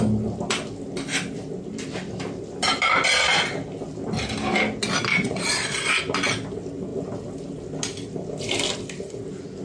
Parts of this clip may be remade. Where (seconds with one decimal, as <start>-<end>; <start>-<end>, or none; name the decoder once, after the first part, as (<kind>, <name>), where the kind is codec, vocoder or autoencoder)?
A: 5.1-6.0 (vocoder, Vocos)